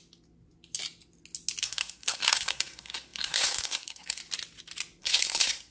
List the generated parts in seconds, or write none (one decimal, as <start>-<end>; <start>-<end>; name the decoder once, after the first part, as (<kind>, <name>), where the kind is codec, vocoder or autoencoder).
1.6-4.2 (codec, SNAC); 5.0-5.7